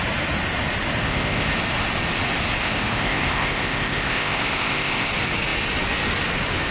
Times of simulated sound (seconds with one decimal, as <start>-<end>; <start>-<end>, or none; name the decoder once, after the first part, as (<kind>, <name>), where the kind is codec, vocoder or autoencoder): 1.0-1.5 (codec, ZipCodec); 2.6-5.1